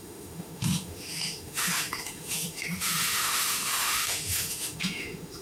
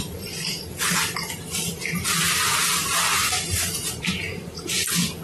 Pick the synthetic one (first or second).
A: first